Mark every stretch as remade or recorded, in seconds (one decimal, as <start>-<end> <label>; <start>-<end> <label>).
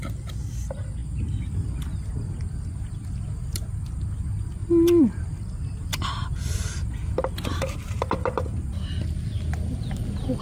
0.0-10.4 recorded